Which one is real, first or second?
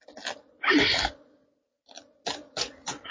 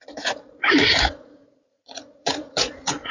first